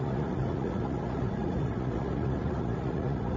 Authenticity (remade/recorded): remade